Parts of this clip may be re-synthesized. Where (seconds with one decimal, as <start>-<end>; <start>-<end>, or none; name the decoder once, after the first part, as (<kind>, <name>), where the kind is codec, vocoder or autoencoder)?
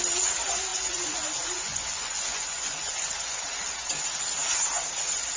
0.7-3.4 (vocoder, Vocos)